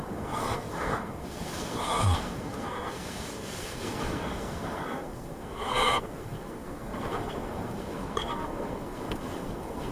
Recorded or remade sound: remade